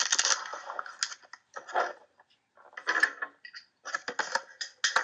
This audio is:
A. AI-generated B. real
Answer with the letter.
B